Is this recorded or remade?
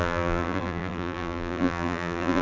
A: remade